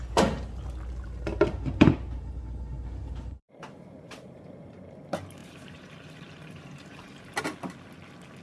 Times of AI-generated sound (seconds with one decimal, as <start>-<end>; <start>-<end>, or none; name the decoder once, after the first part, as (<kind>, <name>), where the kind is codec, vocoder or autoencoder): 3.0-4.4 (vocoder, BigVGAN v2); 5.4-7.4